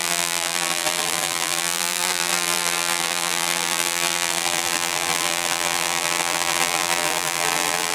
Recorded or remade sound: remade